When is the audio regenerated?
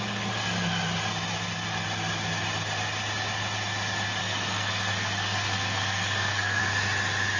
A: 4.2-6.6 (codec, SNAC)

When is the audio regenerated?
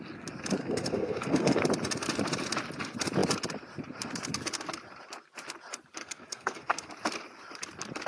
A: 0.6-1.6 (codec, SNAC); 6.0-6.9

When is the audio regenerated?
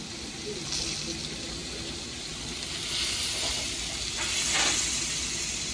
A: none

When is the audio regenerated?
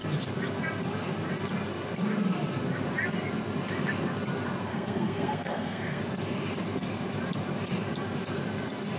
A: 4.7-6.0 (codec, SNAC)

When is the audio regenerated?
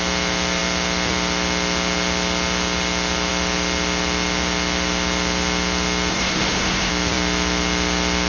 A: 6.1-6.9 (codec, SNAC)